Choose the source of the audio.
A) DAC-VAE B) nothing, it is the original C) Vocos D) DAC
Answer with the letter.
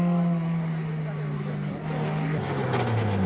B